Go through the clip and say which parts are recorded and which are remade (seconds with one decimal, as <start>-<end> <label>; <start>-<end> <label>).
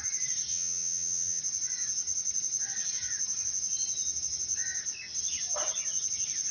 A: 0.0-0.5 recorded; 0.5-1.4 remade; 1.4-6.5 recorded